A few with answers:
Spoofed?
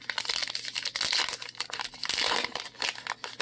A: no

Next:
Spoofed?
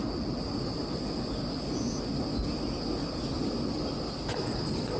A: no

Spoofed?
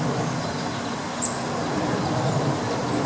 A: no